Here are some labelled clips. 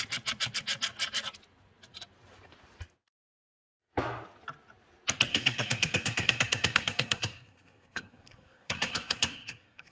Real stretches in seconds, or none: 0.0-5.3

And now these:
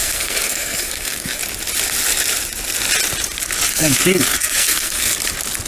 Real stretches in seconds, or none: 1.4-3.7; 5.1-5.7

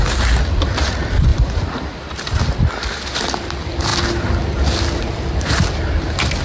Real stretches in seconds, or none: 0.0-6.4

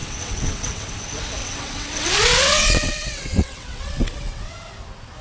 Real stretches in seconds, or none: 0.9-1.4; 4.5-5.2

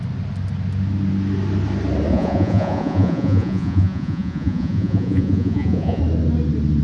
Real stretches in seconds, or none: 0.0-2.1; 6.0-6.8

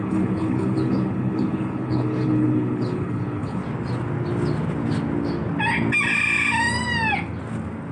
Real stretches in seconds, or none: 3.6-7.9

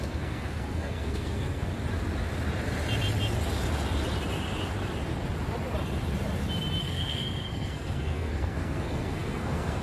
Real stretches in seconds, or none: 1.7-6.8

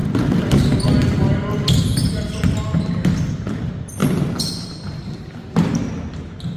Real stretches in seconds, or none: 0.0-6.6